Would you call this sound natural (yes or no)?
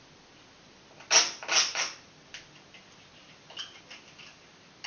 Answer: yes